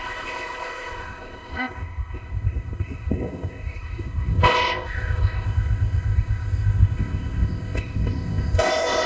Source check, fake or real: fake